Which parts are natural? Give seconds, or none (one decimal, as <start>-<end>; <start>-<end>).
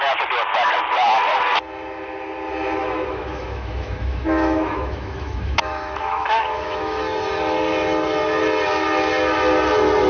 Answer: 0.0-2.8; 7.0-10.1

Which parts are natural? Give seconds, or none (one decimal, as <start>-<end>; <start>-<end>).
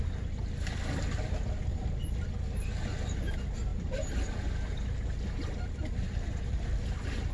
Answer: 0.0-7.3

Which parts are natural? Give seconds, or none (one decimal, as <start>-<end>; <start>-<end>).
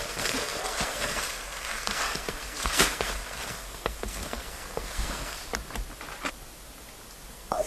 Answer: 5.4-7.3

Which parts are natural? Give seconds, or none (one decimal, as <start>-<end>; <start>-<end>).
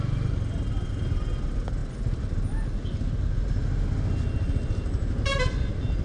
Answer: 0.0-6.0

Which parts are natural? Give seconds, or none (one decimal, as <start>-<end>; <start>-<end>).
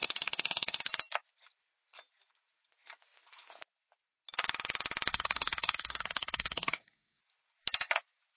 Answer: 0.9-5.1; 7.2-8.4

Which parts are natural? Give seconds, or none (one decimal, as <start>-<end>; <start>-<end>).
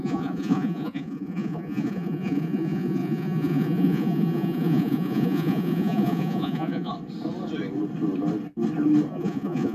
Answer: 6.9-9.1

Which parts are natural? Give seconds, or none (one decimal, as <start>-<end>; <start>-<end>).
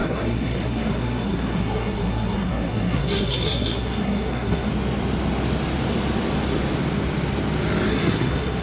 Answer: 4.7-7.9